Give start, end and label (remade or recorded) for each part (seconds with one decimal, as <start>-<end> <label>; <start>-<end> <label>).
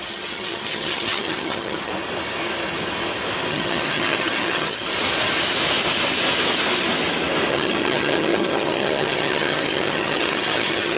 0.0-1.9 remade; 1.9-3.5 recorded; 3.5-4.9 remade; 4.9-7.5 recorded; 7.5-11.0 remade